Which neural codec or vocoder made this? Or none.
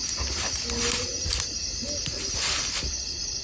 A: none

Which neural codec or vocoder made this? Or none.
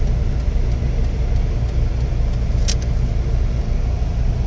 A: none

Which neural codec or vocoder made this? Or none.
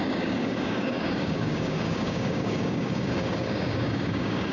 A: codec, DAC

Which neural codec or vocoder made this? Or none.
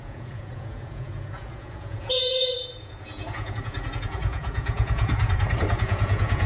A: vocoder, Vocos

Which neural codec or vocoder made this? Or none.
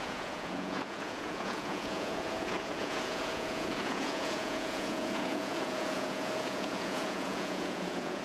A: vocoder, Vocos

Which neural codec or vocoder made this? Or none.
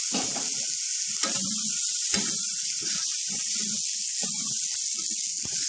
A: none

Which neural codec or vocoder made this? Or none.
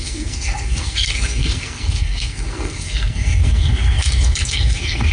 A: codec, SNAC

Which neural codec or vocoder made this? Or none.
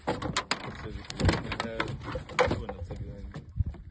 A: none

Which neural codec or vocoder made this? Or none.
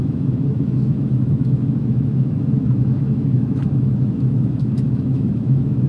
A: autoencoder, DAC-VAE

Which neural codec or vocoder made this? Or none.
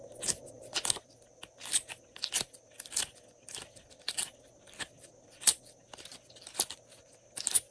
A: none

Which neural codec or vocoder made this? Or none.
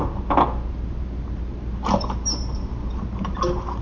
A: none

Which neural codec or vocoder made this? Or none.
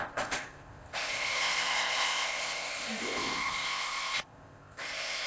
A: codec, ZipCodec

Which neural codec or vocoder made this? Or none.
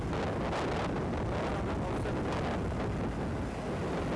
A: none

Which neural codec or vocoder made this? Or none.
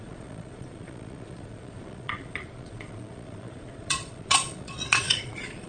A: vocoder, Vocos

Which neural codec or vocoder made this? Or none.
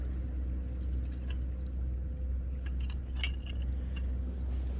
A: none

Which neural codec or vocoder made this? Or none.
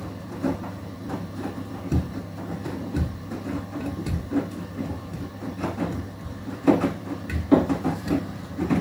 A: vocoder, BigVGAN v2